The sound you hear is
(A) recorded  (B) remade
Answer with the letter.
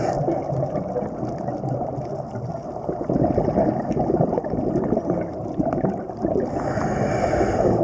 A